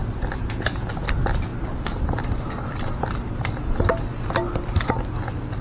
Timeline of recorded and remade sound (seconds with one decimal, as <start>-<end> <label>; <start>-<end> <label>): 0.0-5.6 recorded